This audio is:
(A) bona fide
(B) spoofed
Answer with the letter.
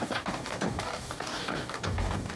B